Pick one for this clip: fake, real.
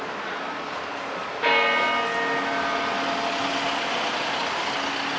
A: real